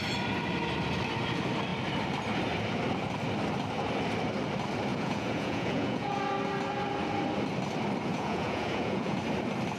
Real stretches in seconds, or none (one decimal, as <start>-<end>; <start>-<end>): 0.0-4.9; 6.2-8.1; 9.2-9.8